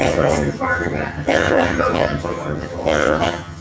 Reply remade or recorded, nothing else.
remade